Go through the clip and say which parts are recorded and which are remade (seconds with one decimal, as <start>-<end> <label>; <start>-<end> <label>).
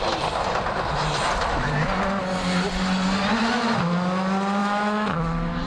0.0-4.6 recorded; 4.6-5.2 remade; 5.2-5.7 recorded